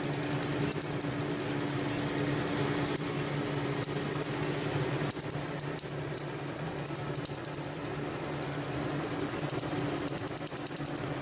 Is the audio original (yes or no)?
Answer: yes